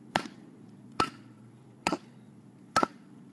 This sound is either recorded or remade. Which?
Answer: remade